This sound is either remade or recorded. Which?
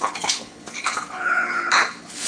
remade